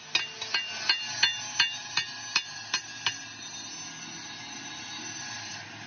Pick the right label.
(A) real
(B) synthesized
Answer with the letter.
A